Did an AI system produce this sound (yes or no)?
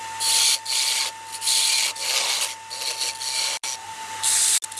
no